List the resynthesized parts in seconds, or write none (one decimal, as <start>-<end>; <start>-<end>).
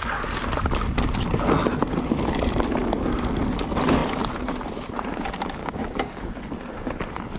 5.6-6.4